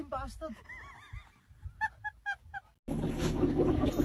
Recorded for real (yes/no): yes